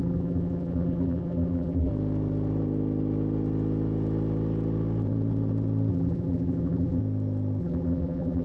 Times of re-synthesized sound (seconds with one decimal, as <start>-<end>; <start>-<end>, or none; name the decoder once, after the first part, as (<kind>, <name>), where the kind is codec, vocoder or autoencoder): 0.0-1.9 (vocoder, BigVGAN v2); 5.9-7.0; 7.6-8.4